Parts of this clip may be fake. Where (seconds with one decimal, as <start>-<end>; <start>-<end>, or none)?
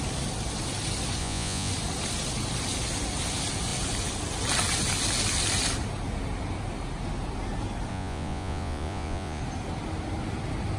1.2-1.7; 7.9-9.4